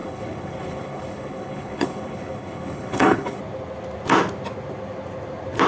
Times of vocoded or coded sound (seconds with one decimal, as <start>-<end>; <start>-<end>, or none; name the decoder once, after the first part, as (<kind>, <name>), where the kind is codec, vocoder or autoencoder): 0.0-3.4 (codec, HILCodec)